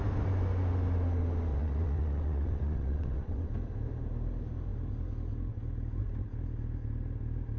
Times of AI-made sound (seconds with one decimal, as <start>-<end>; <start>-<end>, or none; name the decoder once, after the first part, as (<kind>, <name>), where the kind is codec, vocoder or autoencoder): 1.5-3.5 (vocoder, WaveNeXt)